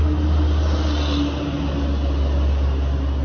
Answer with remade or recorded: recorded